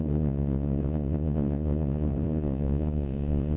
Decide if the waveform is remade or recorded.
remade